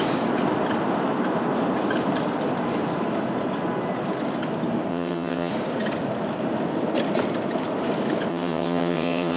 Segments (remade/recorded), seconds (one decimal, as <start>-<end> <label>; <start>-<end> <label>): 0.0-4.9 recorded; 4.9-5.5 remade; 5.5-8.3 recorded; 8.3-9.4 remade